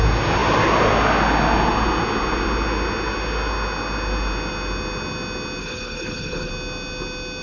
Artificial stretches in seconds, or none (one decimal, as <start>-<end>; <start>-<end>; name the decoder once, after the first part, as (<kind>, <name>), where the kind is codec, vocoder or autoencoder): 5.6-6.5 (codec, HILCodec)